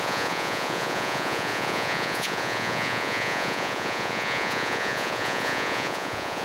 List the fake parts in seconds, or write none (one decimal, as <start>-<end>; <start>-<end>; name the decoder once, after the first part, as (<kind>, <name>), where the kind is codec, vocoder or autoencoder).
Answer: 0.0-6.4 (vocoder, Vocos)